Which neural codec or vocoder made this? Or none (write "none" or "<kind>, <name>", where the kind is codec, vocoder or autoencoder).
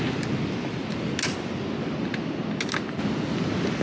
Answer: none